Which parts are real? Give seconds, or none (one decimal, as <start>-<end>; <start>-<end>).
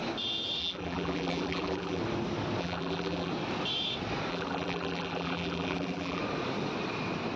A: 0.0-0.6; 2.0-2.6; 3.3-4.3; 6.2-7.4